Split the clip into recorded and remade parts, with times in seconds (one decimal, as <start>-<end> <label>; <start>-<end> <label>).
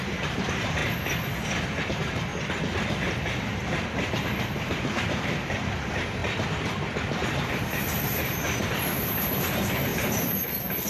0.0-0.8 remade; 0.8-1.8 recorded; 1.8-2.3 remade; 2.3-3.2 recorded; 3.2-6.2 remade; 6.2-7.5 recorded; 7.5-9.9 remade; 9.9-10.9 recorded